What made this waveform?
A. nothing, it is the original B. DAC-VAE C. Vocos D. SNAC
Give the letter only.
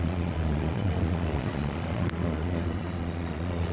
C